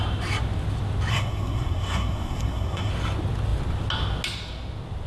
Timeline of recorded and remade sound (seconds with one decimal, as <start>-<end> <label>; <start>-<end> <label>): 0.0-1.1 recorded; 1.1-2.9 remade; 2.9-5.1 recorded